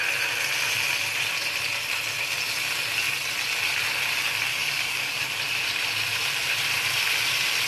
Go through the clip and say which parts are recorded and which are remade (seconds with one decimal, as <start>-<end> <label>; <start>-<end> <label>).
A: 0.0-4.5 recorded; 4.5-5.2 remade; 5.2-7.7 recorded